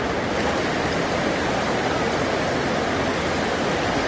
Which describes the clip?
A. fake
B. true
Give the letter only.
B